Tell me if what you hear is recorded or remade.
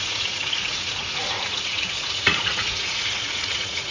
remade